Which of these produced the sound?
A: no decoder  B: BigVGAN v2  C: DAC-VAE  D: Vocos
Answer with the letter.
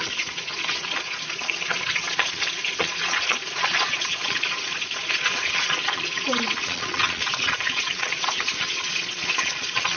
D